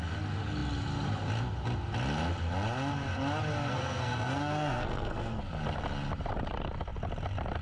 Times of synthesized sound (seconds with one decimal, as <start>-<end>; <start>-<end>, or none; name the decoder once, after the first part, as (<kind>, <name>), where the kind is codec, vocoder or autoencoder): 3.7-5.4 (codec, SNAC)